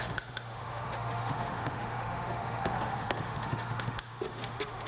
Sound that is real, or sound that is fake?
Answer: fake